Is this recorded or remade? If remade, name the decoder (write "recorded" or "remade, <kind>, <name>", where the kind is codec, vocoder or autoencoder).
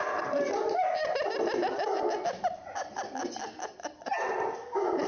recorded